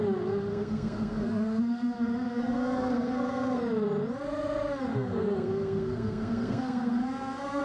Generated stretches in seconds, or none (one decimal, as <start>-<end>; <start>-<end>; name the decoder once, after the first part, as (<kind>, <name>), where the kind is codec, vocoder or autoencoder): 0.5-3.6 (codec, SNAC); 4.9-7.6